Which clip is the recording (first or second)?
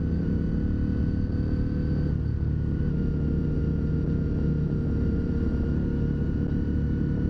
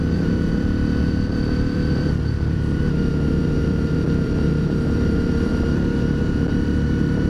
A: first